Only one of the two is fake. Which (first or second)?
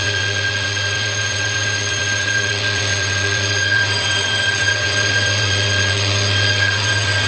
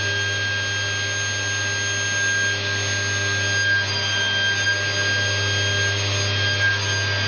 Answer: first